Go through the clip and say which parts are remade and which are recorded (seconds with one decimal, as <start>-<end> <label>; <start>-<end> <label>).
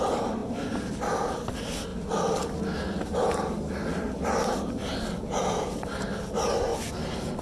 0.0-6.7 recorded; 6.7-7.4 remade